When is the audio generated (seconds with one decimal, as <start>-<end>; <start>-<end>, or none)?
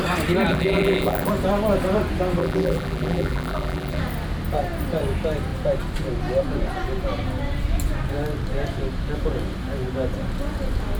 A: 0.5-1.3; 2.4-4.0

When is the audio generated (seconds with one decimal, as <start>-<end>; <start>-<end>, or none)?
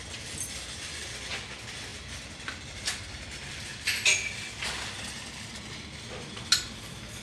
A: none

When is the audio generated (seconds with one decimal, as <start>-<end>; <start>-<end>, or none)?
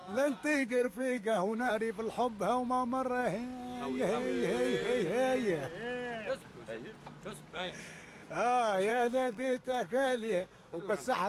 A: 0.0-1.7; 7.5-8.3; 8.9-10.9